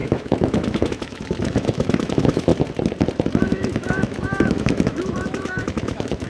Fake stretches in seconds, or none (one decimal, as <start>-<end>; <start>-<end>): 0.0-2.5; 3.4-6.3